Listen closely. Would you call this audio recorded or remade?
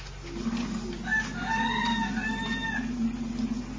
recorded